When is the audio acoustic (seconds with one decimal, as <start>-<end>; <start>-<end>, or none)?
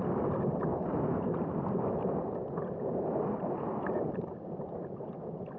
0.0-5.6